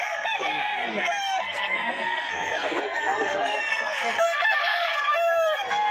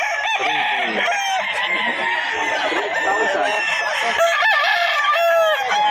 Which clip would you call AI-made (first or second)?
first